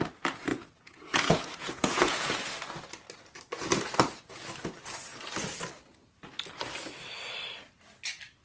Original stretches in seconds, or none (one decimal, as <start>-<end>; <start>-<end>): 0.0-0.5; 2.6-8.4